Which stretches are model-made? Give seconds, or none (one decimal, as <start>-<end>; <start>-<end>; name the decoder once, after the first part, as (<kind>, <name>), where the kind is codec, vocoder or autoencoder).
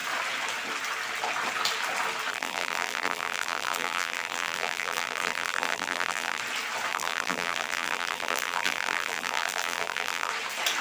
2.3-6.4 (vocoder, BigVGAN v2); 6.9-10.3